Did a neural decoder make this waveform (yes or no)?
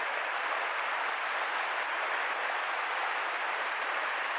no